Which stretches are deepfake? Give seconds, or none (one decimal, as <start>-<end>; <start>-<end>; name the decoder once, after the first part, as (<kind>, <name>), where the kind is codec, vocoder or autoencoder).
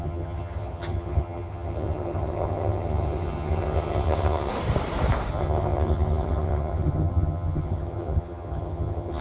0.0-4.5 (vocoder, HiFi-GAN); 5.3-9.2